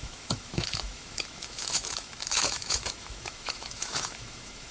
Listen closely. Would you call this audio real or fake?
fake